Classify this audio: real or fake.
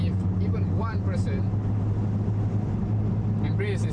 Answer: real